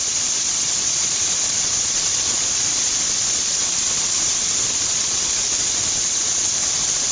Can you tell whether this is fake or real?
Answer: fake